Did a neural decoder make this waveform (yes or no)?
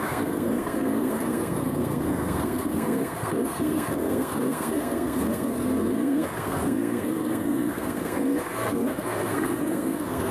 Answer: yes